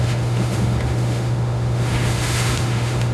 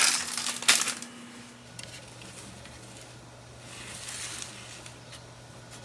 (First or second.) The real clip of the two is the second